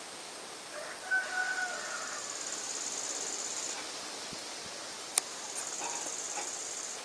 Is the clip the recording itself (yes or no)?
yes